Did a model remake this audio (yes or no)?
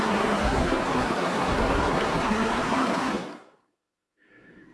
yes